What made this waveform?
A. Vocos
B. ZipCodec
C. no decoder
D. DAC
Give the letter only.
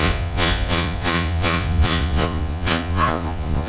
A